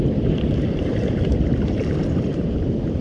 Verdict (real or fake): fake